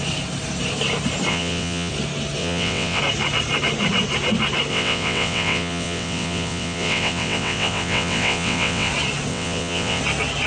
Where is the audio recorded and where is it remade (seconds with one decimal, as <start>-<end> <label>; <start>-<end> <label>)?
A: 0.0-1.3 recorded; 1.3-1.9 remade; 1.9-2.4 recorded; 2.4-3.0 remade; 3.0-4.7 recorded; 4.7-8.9 remade; 8.9-9.3 recorded; 9.3-10.0 remade; 10.0-10.5 recorded